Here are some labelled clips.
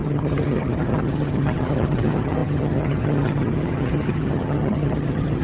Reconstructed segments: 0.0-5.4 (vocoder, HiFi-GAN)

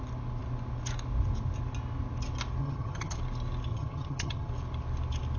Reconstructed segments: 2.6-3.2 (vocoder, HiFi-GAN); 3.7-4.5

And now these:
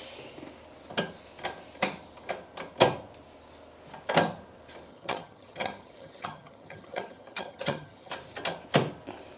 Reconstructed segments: 4.9-8.1 (vocoder, HiFi-GAN)

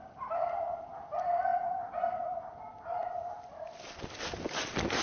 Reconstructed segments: none

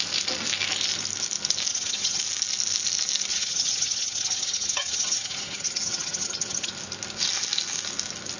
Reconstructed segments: 1.7-2.2 (vocoder, HiFi-GAN); 3.3-6.7

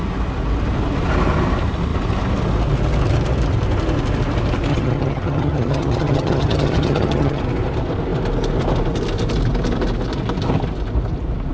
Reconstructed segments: 4.7-7.4 (vocoder, HiFi-GAN)